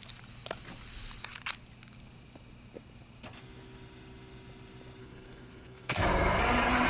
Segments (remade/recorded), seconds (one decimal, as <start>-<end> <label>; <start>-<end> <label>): 0.0-5.0 recorded; 5.0-6.4 remade; 6.4-6.9 recorded